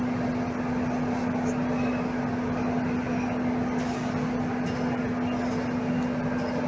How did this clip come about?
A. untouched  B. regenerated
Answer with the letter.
A